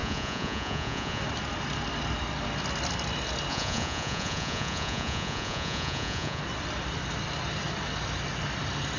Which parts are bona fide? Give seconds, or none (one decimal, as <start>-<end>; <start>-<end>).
1.2-3.5; 6.4-9.0